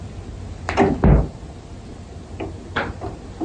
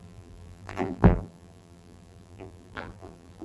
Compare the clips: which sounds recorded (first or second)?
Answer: first